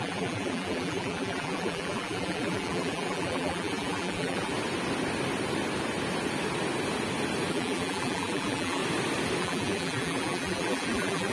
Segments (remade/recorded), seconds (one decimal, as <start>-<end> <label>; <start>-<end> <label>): 0.0-4.5 remade; 4.5-7.5 recorded; 7.5-8.8 remade; 8.8-9.4 recorded; 9.4-11.3 remade

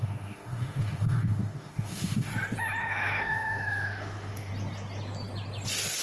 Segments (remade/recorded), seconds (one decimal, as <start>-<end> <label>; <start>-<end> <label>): 0.0-2.3 remade; 2.3-2.8 recorded; 2.8-4.5 remade; 4.5-6.0 recorded

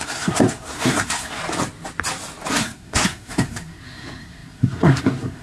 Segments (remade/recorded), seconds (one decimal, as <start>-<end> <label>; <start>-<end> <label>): 0.0-1.4 remade; 1.4-2.5 recorded; 2.5-5.4 remade

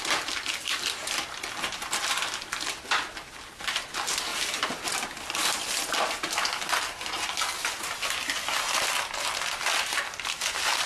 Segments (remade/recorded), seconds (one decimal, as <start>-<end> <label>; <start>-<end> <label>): 0.0-10.9 recorded

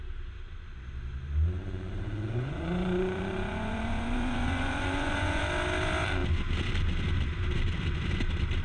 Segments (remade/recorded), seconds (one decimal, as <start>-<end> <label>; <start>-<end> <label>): 0.0-1.6 recorded; 1.6-5.4 remade; 5.4-8.6 recorded

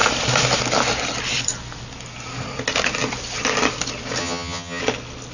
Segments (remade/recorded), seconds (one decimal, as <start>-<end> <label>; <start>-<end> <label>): 0.0-4.2 recorded; 4.2-4.8 remade; 4.8-5.3 recorded